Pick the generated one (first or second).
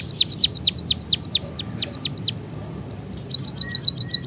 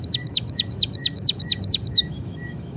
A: second